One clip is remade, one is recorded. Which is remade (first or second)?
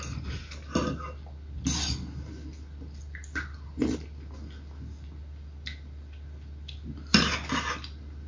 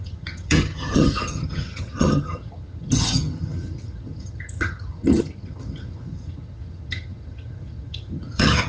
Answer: second